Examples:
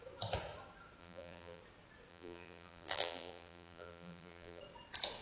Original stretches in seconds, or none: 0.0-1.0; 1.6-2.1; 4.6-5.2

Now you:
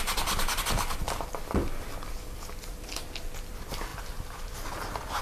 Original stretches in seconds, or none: 0.0-5.2

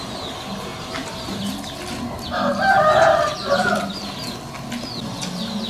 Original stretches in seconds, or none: 0.0-0.7; 1.3-2.6; 3.9-5.7

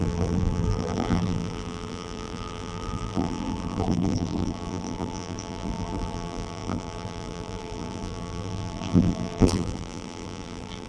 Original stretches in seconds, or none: none

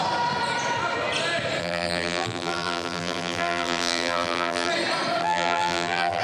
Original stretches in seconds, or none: 0.0-1.6; 4.7-5.2

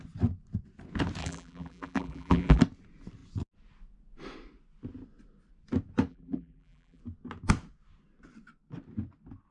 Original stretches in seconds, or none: 0.0-1.2; 2.6-6.1; 7.0-9.5